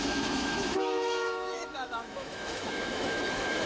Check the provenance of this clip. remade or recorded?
remade